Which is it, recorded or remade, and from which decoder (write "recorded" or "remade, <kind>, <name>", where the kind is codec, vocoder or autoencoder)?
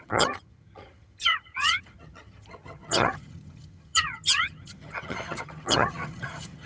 remade, vocoder, HiFi-GAN